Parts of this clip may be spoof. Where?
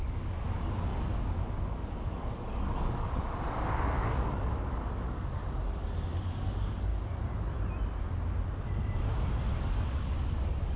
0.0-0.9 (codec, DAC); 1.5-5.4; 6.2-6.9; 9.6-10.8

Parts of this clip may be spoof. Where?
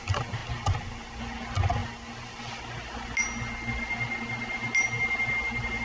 none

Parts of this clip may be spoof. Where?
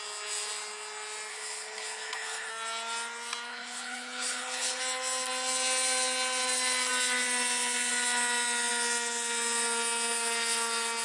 1.3-2.5 (codec, HILCodec); 3.5-4.8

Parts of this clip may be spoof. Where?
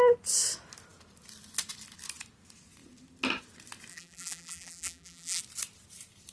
3.9-5.4 (vocoder, BigVGAN v2)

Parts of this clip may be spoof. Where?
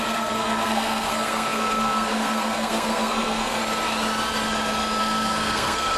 0.0-3.6 (codec, SNAC); 5.0-6.0